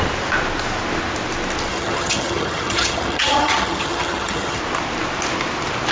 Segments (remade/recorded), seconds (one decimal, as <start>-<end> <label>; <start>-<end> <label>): 0.0-1.7 recorded; 1.7-4.6 remade; 4.6-5.9 recorded